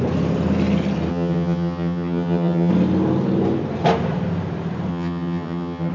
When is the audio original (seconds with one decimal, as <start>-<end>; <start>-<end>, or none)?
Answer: 0.0-1.1; 2.7-4.9